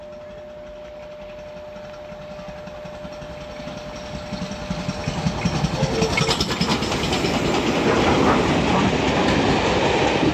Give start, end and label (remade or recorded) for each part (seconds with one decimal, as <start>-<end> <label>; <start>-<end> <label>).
0.0-10.3 recorded